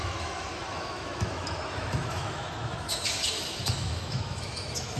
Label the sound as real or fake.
fake